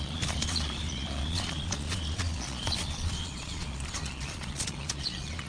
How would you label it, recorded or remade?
remade